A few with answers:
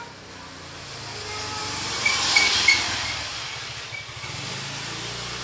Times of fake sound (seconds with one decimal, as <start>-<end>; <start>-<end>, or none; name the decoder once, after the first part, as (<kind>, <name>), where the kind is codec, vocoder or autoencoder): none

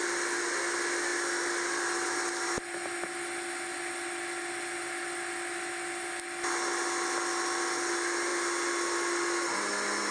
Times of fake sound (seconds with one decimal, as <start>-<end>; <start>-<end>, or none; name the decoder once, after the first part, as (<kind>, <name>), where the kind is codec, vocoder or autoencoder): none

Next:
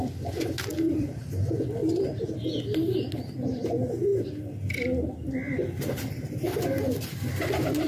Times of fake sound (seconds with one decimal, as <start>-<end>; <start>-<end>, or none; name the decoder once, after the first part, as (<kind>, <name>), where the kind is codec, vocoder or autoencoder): 0.7-1.2 (vocoder, BigVGAN v2)

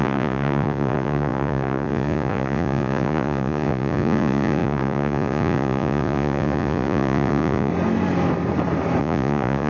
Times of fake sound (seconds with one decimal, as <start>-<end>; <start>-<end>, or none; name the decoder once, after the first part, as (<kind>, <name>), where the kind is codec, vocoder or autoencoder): 0.0-7.7 (vocoder, Vocos); 9.0-9.7